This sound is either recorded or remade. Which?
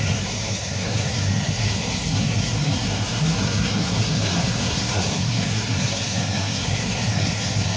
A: remade